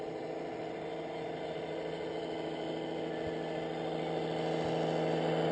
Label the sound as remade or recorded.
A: recorded